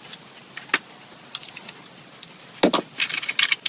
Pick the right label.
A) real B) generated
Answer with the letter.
A